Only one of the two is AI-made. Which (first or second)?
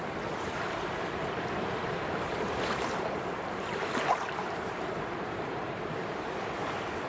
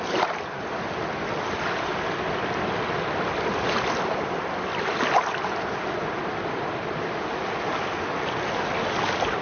first